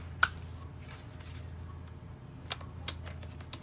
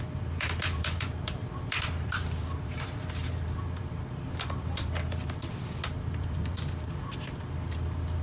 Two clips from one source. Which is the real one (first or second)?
first